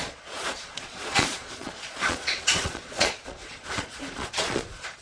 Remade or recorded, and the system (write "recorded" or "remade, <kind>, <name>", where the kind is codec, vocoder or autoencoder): remade, vocoder, Vocos